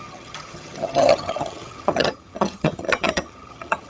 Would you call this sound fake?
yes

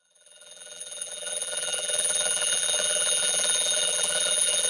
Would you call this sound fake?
yes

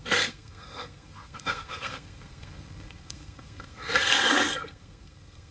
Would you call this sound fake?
yes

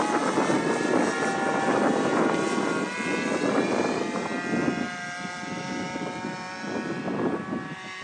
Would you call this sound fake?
no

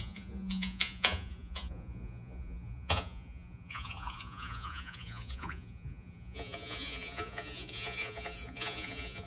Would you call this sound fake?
yes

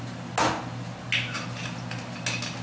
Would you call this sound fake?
no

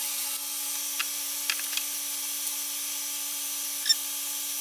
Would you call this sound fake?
no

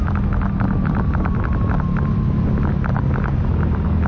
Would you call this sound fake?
no